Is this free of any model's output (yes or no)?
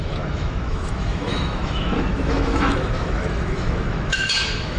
no